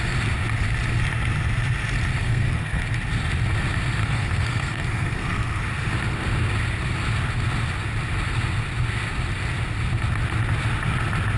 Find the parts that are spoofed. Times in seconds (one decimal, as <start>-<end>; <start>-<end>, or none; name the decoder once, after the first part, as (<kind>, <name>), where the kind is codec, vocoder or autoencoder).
2.2-2.8 (codec, SNAC); 4.0-5.6